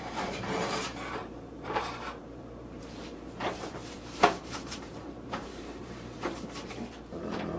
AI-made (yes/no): yes